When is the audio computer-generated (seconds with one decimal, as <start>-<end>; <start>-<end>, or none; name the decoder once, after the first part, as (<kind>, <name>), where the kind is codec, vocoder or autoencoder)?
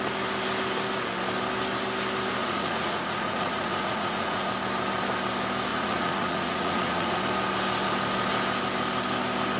2.4-4.5 (vocoder, Vocos); 5.7-7.2